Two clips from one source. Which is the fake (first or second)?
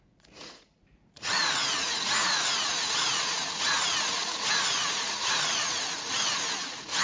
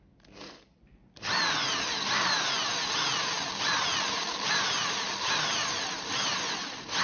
first